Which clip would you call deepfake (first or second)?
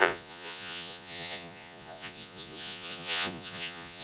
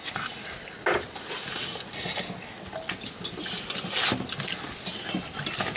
first